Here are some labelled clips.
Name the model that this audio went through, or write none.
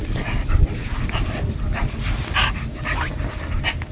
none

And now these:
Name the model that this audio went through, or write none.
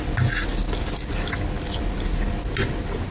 none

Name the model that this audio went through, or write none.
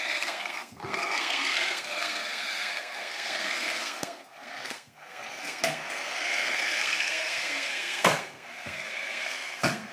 codec, SNAC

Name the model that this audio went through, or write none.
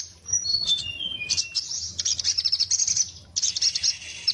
none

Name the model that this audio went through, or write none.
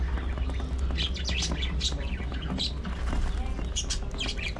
none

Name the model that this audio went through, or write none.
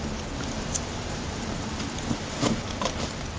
none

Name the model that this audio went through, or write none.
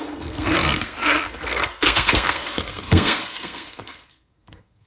codec, SNAC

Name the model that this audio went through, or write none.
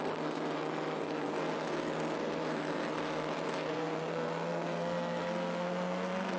codec, SNAC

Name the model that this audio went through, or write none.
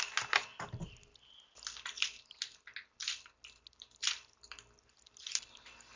none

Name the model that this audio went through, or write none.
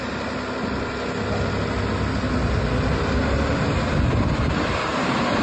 none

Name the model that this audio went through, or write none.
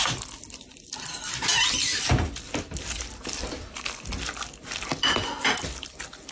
none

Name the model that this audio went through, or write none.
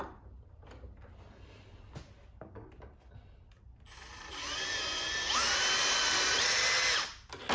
none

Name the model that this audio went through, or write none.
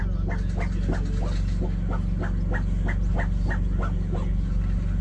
none